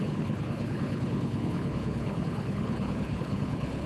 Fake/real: fake